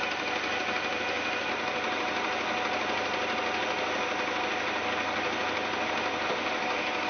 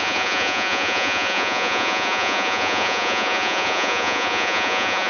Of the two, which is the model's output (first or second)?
second